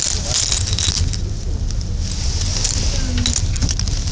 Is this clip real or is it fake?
real